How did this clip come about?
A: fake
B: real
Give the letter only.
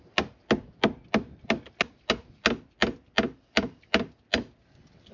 B